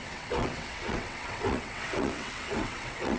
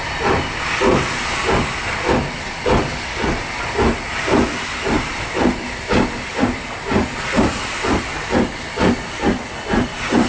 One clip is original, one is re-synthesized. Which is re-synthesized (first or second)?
first